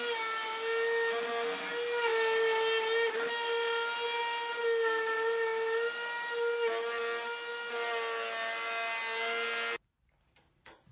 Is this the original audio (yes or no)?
yes